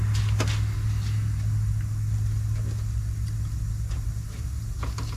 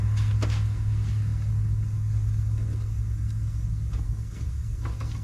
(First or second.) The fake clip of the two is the second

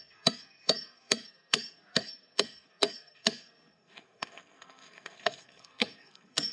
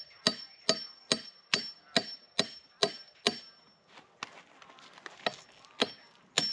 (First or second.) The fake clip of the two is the first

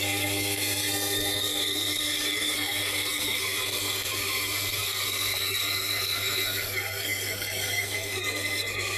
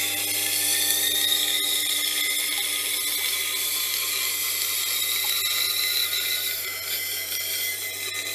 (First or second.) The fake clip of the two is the first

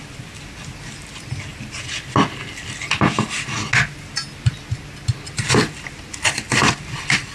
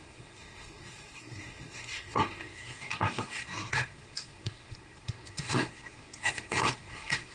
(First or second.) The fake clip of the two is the second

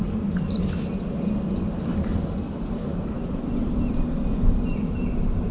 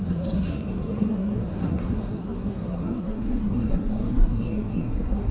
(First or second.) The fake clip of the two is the second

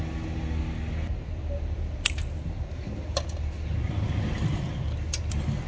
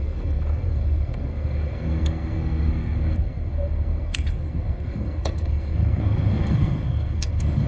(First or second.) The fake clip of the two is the second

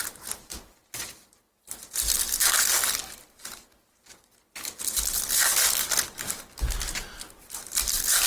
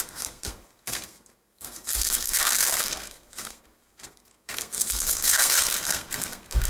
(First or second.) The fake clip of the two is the second